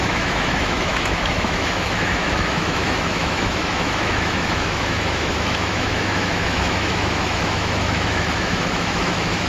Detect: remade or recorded remade